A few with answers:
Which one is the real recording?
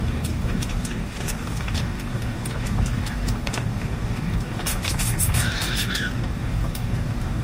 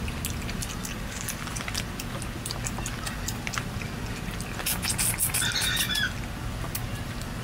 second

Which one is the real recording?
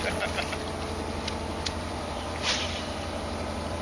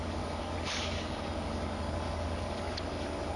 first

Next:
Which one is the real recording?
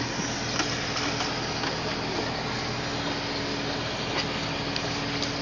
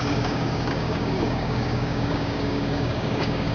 first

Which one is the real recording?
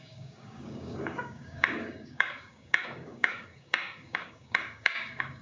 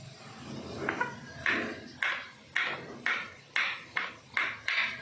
second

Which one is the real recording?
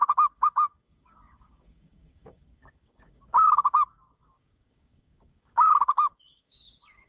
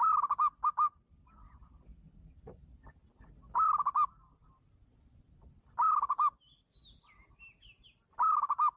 second